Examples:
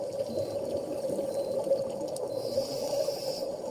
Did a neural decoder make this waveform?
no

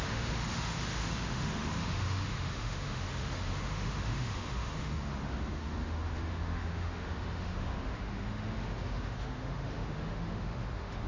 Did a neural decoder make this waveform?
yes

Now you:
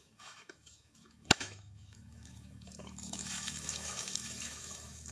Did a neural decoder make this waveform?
yes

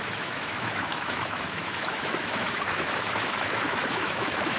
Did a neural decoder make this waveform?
yes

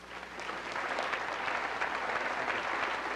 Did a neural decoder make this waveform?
no